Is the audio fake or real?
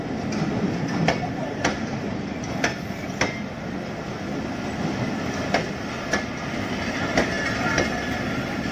real